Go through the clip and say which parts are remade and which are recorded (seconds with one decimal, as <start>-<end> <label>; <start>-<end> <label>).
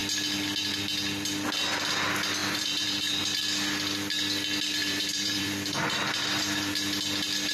0.0-2.4 recorded; 2.4-3.2 remade; 3.2-4.8 recorded; 4.8-6.7 remade; 6.7-7.5 recorded